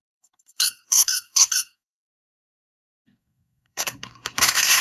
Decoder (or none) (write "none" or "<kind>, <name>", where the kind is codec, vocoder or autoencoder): codec, SNAC